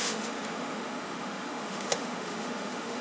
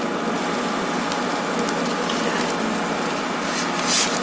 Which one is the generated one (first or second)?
first